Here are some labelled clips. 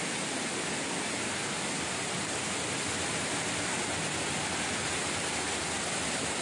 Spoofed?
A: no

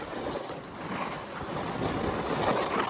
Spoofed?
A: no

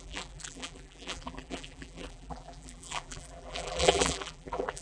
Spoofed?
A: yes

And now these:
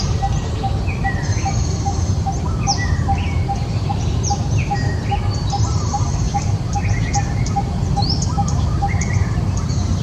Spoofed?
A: yes